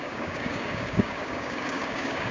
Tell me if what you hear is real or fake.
fake